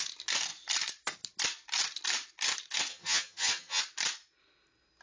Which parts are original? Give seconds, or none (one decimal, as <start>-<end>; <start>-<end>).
0.0-2.9; 3.8-5.0